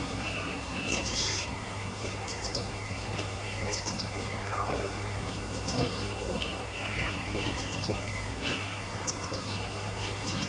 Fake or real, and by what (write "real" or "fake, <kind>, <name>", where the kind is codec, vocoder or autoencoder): fake, codec, SNAC